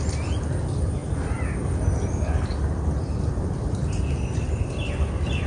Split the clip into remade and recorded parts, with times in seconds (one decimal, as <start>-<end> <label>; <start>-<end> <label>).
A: 0.0-5.5 recorded